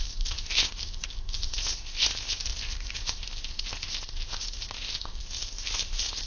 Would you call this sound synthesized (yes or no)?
yes